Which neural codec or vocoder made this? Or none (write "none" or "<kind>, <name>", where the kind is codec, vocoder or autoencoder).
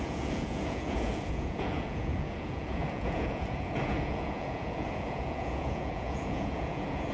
vocoder, Vocos